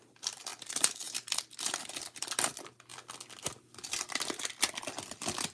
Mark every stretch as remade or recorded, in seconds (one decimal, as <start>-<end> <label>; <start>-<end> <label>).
0.0-5.5 recorded